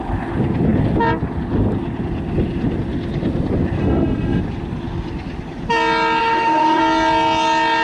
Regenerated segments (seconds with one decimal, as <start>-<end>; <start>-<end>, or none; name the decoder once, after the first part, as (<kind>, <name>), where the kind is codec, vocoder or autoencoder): 3.8-4.4 (autoencoder, DAC-VAE); 6.2-6.8